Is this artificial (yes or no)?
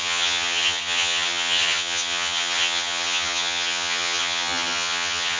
yes